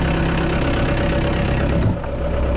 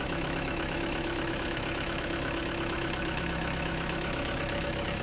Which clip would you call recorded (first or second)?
first